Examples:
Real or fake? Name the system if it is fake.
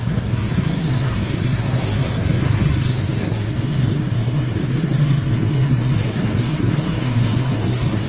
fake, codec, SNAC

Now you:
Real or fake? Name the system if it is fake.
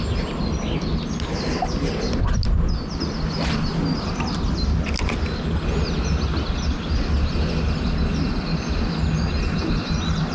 real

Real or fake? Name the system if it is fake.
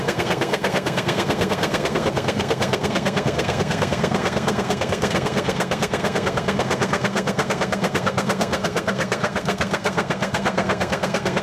fake, codec, SNAC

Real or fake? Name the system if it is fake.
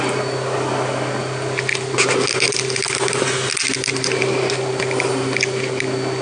real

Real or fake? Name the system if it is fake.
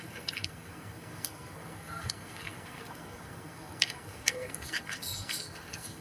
fake, codec, SNAC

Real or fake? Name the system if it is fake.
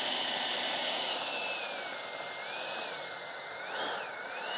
real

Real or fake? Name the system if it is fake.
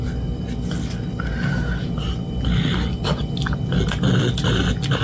real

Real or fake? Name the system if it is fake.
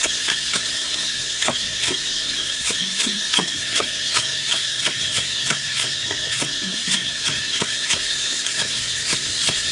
fake, codec, SNAC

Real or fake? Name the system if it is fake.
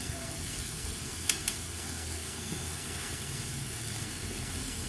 fake, codec, SNAC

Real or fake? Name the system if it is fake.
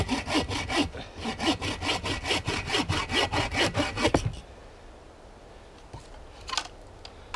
real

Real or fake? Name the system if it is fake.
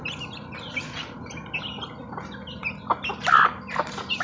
real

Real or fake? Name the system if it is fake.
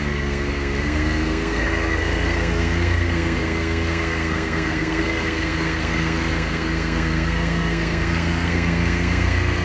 fake, codec, SNAC